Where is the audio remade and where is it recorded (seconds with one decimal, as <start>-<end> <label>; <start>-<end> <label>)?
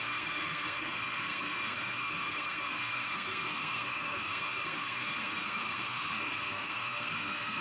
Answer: 0.0-7.6 remade